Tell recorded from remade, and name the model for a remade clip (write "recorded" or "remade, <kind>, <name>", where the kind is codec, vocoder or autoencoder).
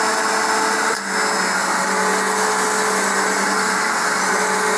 recorded